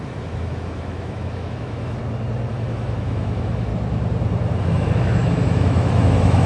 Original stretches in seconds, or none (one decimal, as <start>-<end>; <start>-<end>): 2.0-2.5; 3.7-4.6